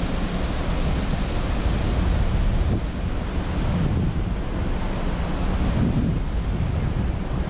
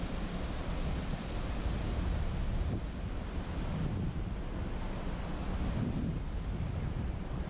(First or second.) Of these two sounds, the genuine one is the first